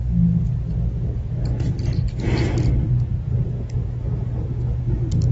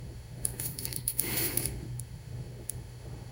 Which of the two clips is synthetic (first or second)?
second